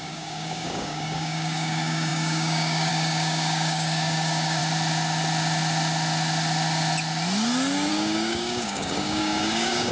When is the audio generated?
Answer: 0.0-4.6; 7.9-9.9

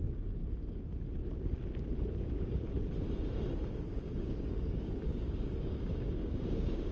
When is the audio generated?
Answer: 0.0-0.4; 2.2-2.6; 3.5-6.9

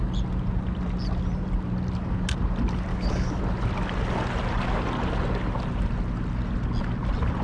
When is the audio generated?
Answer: 2.9-3.4